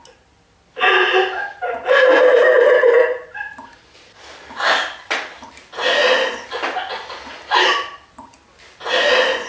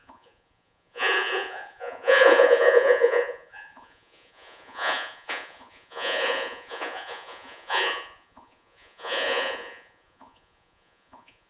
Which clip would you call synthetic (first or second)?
second